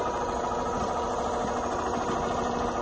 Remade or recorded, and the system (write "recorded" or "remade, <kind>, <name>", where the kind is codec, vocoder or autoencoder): recorded